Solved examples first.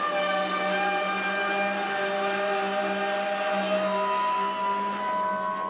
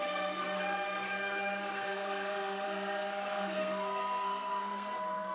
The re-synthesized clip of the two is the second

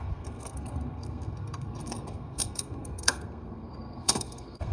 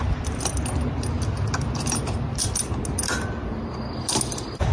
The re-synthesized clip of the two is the first